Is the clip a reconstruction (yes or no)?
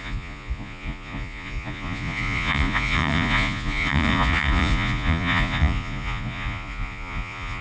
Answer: yes